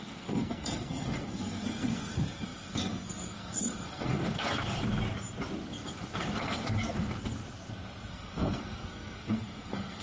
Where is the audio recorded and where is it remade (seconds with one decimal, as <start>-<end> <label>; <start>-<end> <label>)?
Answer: 0.0-4.8 remade; 4.8-5.7 recorded; 5.7-7.4 remade; 7.4-8.1 recorded; 8.1-10.0 remade